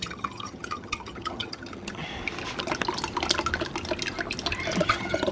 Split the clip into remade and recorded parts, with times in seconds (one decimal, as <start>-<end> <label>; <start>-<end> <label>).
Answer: 0.0-2.1 remade; 2.1-4.8 recorded; 4.8-5.3 remade